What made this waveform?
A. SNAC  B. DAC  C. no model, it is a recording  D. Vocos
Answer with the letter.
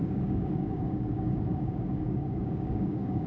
B